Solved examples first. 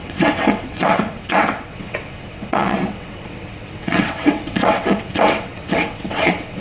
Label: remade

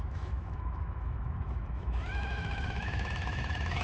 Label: remade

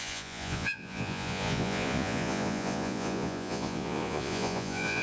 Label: remade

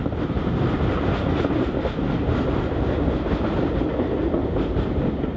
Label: recorded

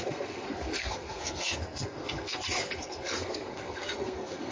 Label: remade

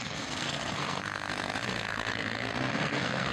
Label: remade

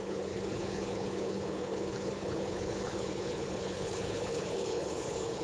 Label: remade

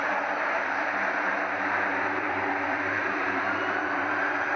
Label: remade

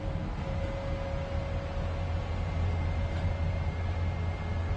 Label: recorded